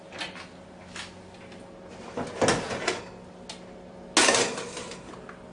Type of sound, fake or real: real